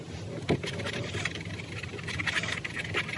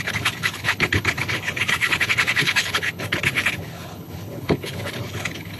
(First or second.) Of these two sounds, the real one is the first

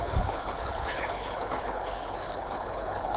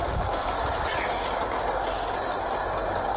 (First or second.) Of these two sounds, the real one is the second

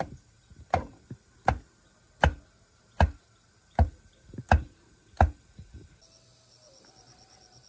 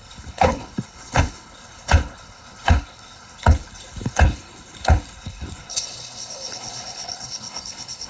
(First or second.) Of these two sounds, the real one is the first